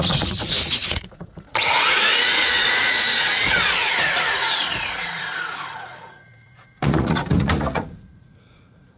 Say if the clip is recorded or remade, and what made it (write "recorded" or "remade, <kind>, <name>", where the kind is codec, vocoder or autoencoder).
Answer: remade, vocoder, Vocos